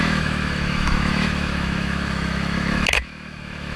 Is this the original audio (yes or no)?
no